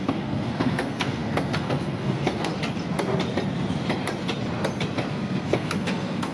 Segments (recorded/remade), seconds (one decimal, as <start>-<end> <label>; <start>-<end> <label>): 0.0-2.5 remade; 2.5-5.1 recorded; 5.1-6.3 remade